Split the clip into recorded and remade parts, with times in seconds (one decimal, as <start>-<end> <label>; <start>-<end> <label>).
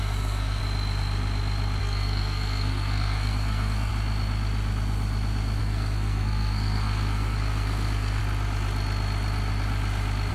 0.0-0.6 remade; 0.6-1.8 recorded; 1.8-3.9 remade; 3.9-5.6 recorded; 5.6-8.2 remade; 8.2-10.3 recorded